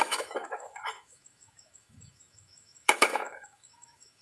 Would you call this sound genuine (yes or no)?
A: no